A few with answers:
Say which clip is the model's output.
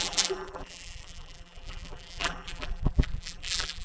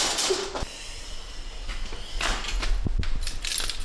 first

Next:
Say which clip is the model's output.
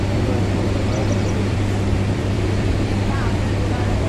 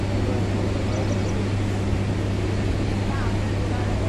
first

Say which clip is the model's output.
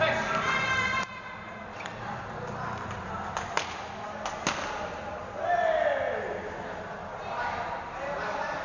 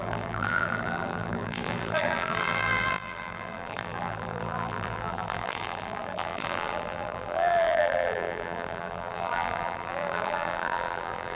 second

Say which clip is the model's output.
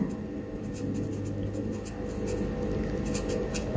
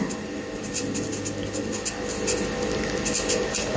second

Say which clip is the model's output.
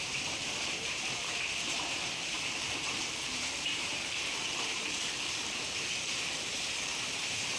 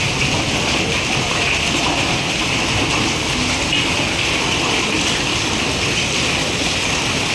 first